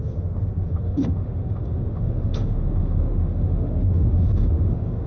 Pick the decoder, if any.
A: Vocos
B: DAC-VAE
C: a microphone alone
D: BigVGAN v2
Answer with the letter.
B